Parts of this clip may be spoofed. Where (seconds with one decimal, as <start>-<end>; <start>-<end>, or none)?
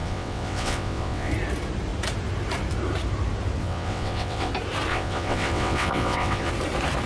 0.0-1.3; 3.6-4.5; 4.9-6.5